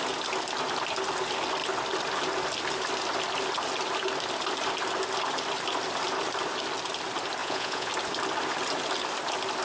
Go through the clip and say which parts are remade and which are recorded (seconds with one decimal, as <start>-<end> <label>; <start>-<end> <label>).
0.0-7.4 recorded; 7.4-7.9 remade; 7.9-9.6 recorded